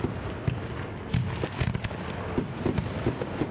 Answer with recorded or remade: recorded